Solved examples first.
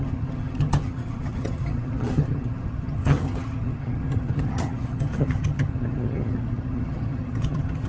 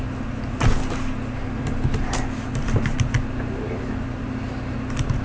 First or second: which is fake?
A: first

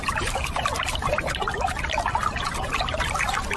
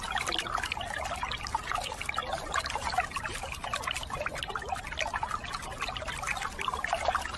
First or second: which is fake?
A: first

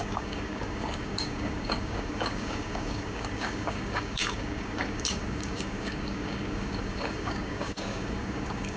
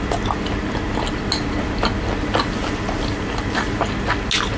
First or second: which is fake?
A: first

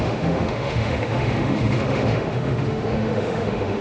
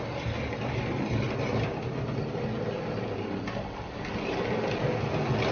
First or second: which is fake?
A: first